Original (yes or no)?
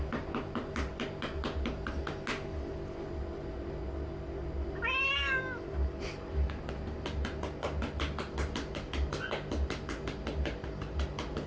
yes